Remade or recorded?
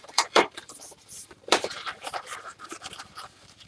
remade